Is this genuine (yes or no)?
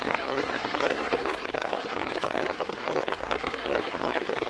no